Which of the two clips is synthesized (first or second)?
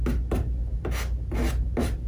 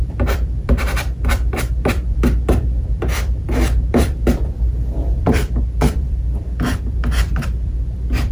second